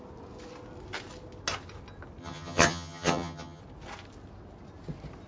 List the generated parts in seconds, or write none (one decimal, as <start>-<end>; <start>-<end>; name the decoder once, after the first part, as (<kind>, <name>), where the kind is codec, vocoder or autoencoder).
2.2-3.6 (vocoder, HiFi-GAN)